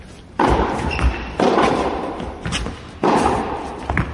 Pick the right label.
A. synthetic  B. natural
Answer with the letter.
B